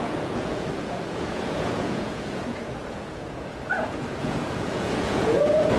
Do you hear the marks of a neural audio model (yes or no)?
yes